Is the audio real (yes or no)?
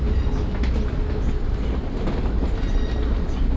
yes